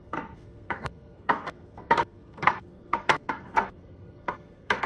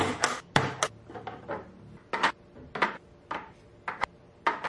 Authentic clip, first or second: second